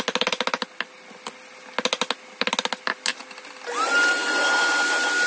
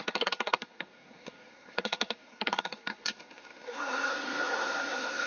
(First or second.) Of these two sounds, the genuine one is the first